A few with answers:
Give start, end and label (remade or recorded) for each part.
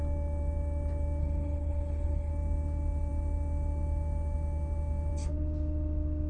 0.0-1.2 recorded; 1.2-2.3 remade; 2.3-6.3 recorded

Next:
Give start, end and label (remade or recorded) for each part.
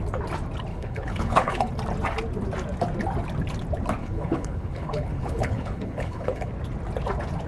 0.0-0.7 recorded; 0.7-1.7 remade; 1.7-4.0 recorded; 4.0-6.5 remade; 6.5-7.5 recorded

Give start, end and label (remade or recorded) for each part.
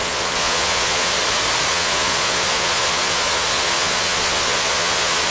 0.0-1.1 remade; 1.1-1.7 recorded; 1.7-5.3 remade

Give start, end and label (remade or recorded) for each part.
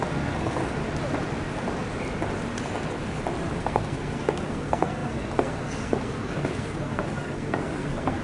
0.0-0.6 remade; 0.6-3.6 recorded; 3.6-8.2 remade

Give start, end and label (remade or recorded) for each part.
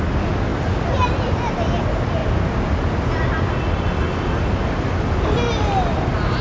0.0-6.4 recorded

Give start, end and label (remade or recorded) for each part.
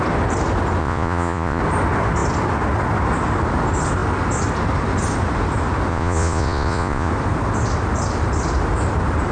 0.0-0.8 recorded; 0.8-1.6 remade; 1.6-5.9 recorded; 5.9-7.1 remade; 7.1-9.3 recorded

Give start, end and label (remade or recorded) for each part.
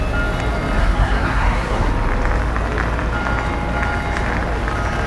0.0-0.8 recorded; 0.8-1.9 remade; 1.9-5.1 recorded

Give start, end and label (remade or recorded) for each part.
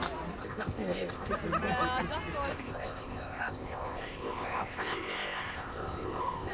0.0-0.4 recorded; 0.4-1.3 remade; 1.3-2.5 recorded; 2.5-6.5 remade